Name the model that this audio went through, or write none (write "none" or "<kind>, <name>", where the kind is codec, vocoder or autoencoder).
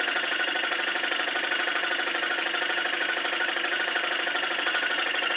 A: vocoder, Vocos